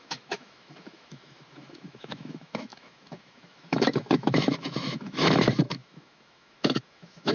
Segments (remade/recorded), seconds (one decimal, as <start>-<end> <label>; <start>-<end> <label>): 0.0-7.3 remade